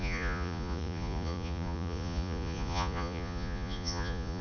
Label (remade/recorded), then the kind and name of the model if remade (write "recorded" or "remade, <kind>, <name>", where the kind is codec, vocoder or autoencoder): remade, vocoder, Vocos